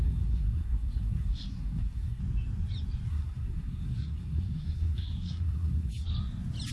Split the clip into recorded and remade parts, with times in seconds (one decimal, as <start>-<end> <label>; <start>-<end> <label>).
0.0-2.2 remade; 2.2-3.1 recorded; 3.1-6.1 remade; 6.1-6.7 recorded